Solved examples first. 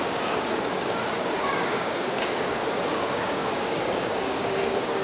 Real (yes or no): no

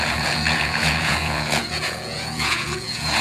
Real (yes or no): no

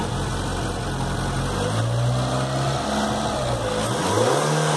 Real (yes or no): yes